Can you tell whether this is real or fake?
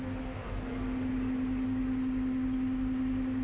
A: real